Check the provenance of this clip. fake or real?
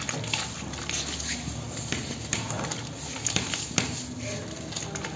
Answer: real